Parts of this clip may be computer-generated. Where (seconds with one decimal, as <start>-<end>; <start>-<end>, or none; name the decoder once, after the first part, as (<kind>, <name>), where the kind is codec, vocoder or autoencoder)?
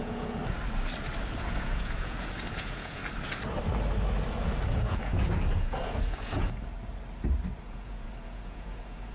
0.0-0.4 (vocoder, Vocos); 1.3-3.0; 4.7-6.7; 7.6-9.1